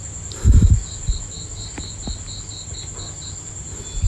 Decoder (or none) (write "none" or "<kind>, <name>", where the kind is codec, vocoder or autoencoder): none